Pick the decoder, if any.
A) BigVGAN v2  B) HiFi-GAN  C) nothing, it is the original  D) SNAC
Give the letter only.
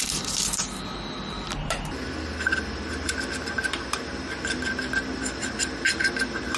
A